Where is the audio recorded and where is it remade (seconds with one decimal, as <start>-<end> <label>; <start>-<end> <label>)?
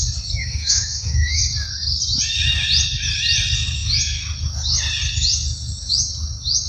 0.0-0.4 recorded; 0.4-1.4 remade; 1.4-6.7 recorded